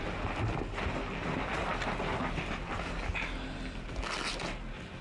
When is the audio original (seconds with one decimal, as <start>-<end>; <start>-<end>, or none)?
0.0-5.0